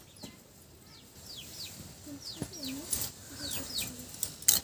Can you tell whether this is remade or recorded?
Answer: recorded